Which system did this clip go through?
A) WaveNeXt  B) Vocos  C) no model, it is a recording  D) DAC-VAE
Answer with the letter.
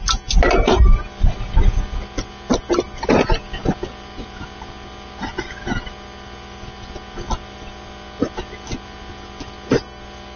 C